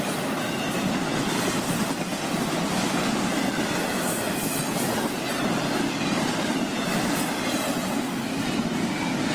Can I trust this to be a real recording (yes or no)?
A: yes